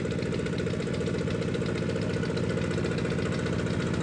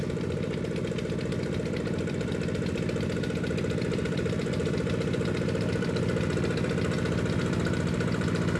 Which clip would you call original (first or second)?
first